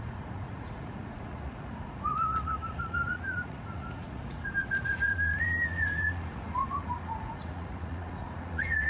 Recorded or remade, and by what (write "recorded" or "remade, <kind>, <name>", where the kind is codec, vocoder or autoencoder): remade, vocoder, Vocos